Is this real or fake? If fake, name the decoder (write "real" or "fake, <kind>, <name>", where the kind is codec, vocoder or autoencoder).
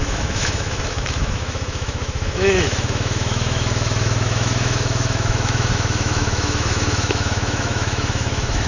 fake, autoencoder, DAC-VAE